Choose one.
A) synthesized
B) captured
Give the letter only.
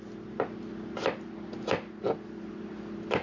B